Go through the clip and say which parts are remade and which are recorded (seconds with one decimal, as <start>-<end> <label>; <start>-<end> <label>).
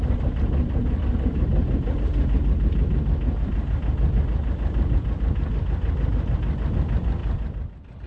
0.0-8.1 recorded